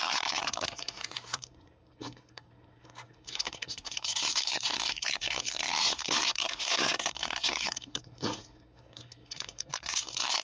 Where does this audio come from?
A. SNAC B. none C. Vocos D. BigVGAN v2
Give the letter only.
A